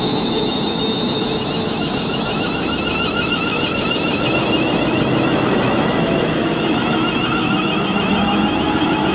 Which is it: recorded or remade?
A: remade